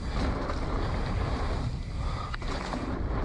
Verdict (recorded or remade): recorded